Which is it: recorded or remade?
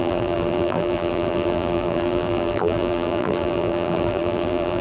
remade